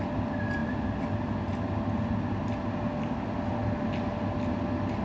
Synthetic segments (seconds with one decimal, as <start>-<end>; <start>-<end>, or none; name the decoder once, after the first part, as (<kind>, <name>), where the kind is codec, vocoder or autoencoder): none